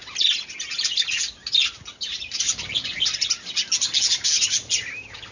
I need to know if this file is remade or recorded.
recorded